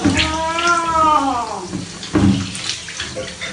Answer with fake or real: real